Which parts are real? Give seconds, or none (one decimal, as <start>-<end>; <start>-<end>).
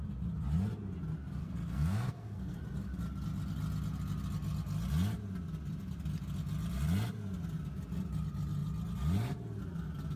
0.0-1.4; 2.6-10.2